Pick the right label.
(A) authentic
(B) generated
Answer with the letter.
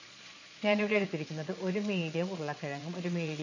B